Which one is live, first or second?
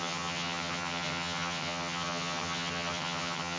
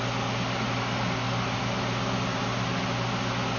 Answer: second